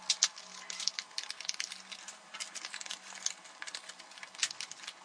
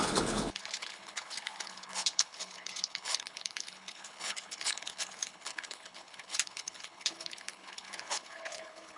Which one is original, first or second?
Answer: first